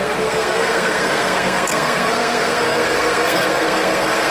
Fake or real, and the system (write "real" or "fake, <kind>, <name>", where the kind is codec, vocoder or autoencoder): fake, codec, SNAC